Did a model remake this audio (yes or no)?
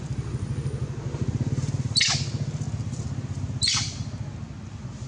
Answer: no